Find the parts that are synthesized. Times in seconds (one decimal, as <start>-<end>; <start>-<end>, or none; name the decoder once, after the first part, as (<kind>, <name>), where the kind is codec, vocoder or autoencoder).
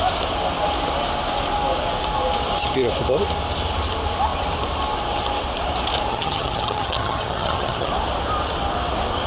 6.1-7.9 (vocoder, HiFi-GAN)